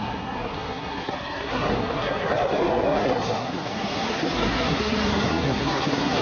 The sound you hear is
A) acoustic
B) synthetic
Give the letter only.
B